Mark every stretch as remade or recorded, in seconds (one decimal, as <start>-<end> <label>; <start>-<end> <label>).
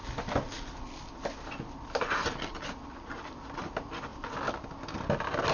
0.0-5.5 recorded